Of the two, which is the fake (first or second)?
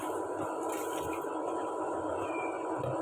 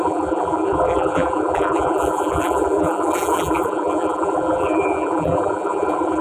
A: second